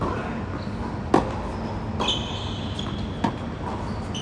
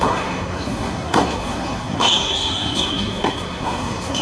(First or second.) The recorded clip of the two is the first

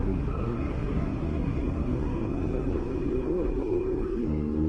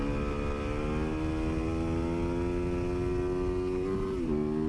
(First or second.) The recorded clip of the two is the second